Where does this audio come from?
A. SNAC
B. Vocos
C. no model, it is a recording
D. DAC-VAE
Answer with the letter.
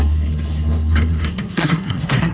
A